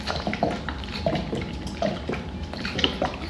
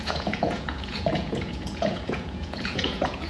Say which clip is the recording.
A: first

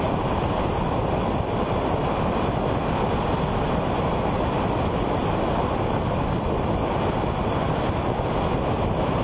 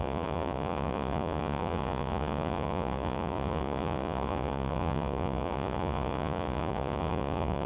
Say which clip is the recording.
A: first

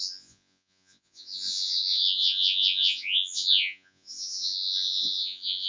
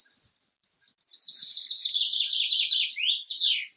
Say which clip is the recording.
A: second